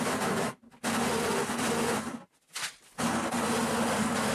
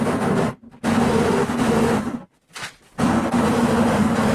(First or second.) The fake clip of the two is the second